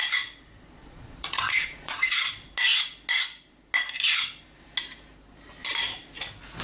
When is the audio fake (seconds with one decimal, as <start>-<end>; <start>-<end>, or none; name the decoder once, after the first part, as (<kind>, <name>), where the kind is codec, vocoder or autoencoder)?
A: 0.8-2.3 (vocoder, Vocos)